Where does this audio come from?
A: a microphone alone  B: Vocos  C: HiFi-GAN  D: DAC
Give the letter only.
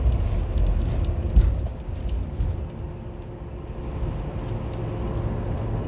A